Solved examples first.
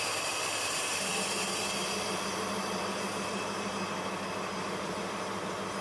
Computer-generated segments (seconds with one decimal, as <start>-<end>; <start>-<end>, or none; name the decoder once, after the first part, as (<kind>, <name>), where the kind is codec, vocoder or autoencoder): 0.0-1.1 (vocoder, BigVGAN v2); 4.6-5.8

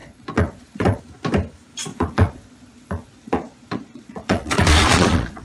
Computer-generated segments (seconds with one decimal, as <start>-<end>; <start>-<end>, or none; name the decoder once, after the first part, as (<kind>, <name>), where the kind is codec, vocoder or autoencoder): 0.0-1.0 (vocoder, Vocos); 1.9-5.4

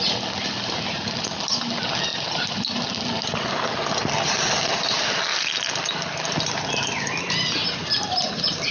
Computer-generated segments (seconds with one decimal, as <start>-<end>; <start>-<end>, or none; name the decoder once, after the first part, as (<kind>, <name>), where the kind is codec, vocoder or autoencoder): none

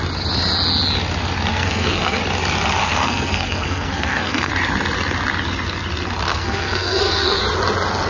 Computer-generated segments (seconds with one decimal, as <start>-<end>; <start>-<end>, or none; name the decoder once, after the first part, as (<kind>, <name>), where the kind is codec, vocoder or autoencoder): 1.5-2.2 (codec, SNAC); 2.8-4.5; 6.3-7.4